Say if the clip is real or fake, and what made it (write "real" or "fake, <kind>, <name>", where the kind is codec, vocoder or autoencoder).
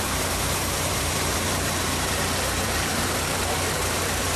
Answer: fake, vocoder, BigVGAN v2